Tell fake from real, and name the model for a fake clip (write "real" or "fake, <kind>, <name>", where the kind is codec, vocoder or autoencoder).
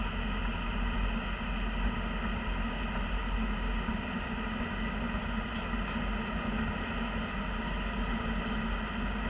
real